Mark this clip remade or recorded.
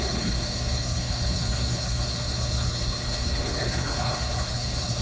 remade